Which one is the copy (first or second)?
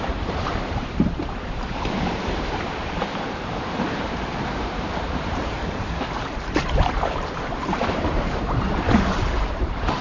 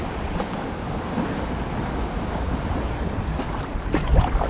first